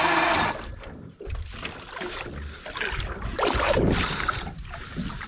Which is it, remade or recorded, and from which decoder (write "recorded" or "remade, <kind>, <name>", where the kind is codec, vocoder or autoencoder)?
recorded